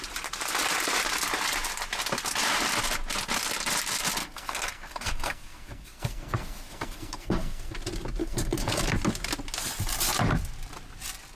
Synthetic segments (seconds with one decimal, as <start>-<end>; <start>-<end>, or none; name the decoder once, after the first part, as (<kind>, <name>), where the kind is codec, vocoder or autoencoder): 4.2-7.7 (codec, SNAC); 8.2-8.8